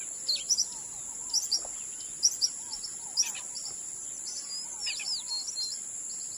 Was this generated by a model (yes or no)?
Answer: no